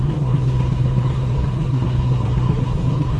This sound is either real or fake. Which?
fake